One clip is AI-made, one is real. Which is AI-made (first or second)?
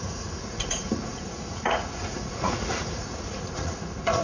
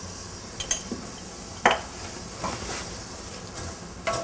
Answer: first